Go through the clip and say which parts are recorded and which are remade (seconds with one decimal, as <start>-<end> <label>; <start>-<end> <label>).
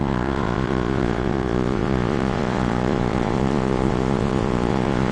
0.0-5.1 remade